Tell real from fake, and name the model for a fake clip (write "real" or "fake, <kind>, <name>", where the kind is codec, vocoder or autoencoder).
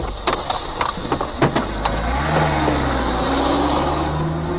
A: real